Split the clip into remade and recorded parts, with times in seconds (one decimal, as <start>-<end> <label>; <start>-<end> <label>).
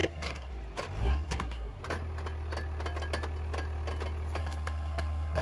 0.0-0.5 remade; 0.5-1.0 recorded; 1.0-1.8 remade; 1.8-4.4 recorded; 4.4-5.4 remade